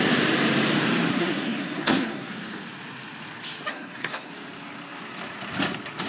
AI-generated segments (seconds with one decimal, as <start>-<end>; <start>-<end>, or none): 1.1-2.3; 3.7-4.3